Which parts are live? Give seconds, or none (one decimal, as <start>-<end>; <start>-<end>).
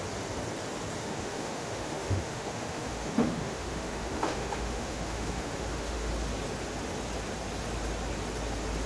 0.0-1.0; 6.1-8.9